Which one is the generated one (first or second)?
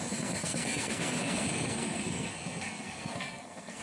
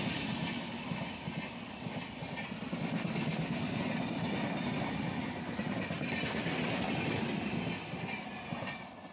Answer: first